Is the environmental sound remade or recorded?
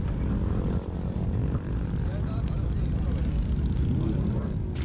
recorded